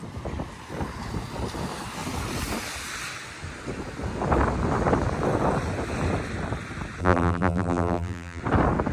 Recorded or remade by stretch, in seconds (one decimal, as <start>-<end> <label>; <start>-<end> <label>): 0.0-7.0 recorded; 7.0-8.4 remade; 8.4-8.9 recorded